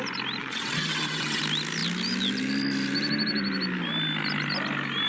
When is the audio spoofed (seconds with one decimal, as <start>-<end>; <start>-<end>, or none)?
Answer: 0.4-1.4